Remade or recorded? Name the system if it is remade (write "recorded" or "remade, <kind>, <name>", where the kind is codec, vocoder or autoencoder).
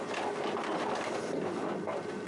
recorded